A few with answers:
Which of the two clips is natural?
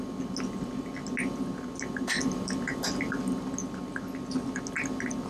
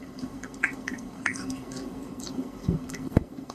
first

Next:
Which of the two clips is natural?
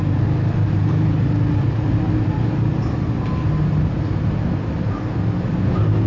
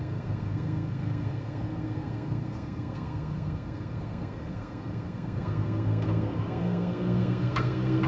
first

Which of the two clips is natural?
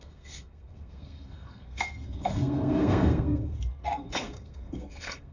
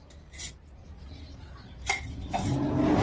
second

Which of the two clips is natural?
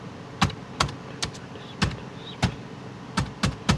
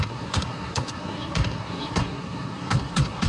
first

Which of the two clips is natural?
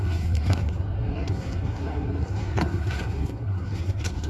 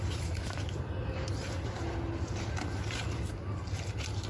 second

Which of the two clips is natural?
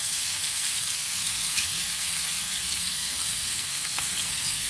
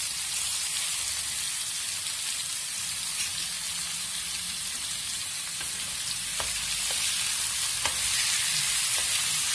second